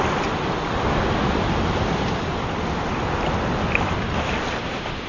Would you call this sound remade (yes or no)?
no